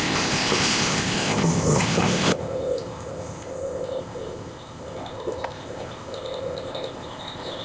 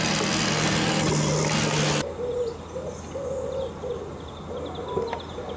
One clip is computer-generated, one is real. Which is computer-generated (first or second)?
first